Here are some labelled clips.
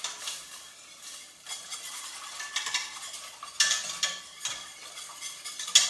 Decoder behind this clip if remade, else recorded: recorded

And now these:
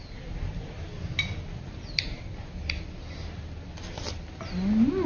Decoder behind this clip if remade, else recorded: recorded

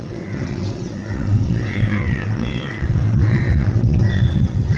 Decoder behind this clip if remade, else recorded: remade, vocoder, WaveNeXt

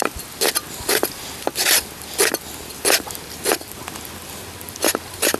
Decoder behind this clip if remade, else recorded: recorded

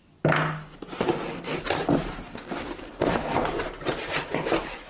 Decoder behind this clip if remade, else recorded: recorded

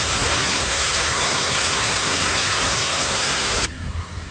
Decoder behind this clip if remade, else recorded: remade, codec, SNAC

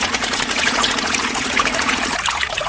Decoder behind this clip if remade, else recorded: remade, vocoder, Vocos